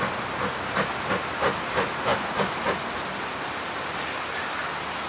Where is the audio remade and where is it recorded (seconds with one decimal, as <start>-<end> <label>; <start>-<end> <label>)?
0.0-5.1 recorded